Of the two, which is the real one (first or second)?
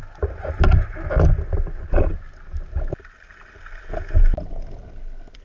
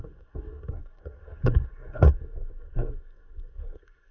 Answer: first